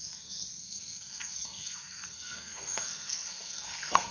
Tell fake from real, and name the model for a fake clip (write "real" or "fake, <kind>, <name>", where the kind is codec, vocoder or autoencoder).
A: fake, codec, SNAC